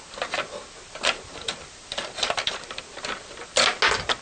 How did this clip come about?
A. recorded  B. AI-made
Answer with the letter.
A